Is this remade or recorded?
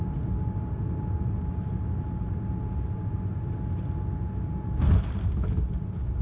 recorded